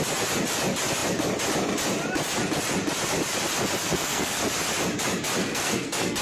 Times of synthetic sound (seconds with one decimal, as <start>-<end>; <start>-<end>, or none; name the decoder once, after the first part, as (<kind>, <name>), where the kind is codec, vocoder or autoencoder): 3.8-4.4 (codec, SNAC); 5.4-6.2